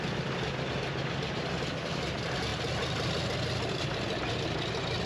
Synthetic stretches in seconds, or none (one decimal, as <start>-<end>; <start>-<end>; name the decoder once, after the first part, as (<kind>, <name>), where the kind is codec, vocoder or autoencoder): none